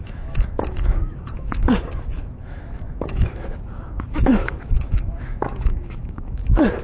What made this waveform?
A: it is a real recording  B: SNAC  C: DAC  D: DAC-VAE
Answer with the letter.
D